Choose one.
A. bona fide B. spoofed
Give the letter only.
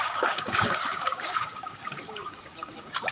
B